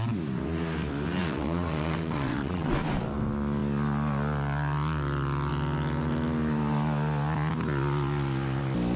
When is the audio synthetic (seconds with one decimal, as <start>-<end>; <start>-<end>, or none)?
1.2-2.7